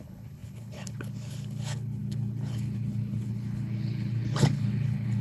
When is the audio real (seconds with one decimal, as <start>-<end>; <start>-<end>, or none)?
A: none